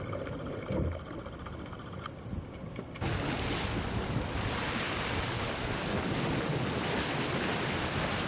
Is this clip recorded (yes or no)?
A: yes